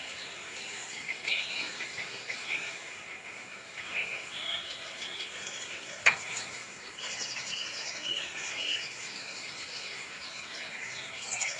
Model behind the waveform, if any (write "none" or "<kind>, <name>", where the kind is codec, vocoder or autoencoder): codec, SNAC